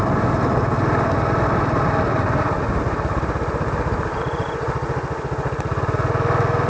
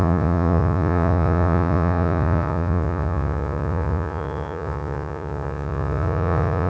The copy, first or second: second